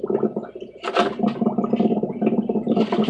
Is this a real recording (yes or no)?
yes